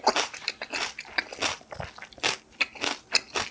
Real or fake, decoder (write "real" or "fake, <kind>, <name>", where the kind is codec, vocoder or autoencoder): real